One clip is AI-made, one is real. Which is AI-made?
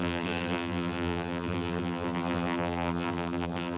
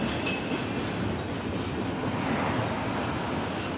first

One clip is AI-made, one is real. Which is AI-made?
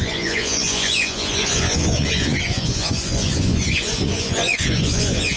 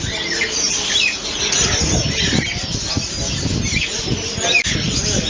first